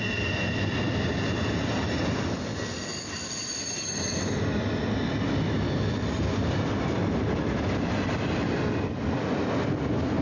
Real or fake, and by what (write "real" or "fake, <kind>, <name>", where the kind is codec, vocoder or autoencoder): real